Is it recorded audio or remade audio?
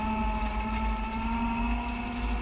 recorded